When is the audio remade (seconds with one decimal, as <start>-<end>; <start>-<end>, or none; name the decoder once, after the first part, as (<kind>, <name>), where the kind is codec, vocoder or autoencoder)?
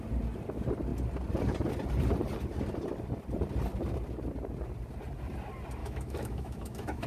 5.8-7.1 (autoencoder, DAC-VAE)